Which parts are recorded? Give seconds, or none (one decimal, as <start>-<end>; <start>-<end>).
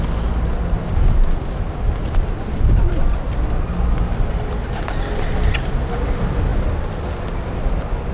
0.0-8.1